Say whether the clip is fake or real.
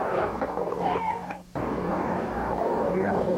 fake